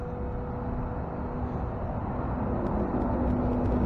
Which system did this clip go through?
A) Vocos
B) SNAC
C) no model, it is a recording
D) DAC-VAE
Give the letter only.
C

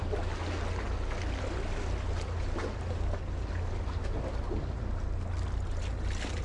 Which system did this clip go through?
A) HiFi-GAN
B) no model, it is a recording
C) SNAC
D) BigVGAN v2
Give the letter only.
B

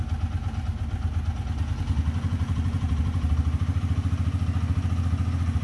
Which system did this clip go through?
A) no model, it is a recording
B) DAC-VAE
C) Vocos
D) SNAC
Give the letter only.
A